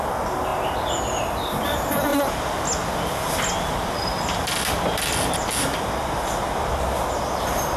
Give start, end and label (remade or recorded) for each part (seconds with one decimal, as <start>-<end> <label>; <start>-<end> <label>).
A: 0.0-7.8 recorded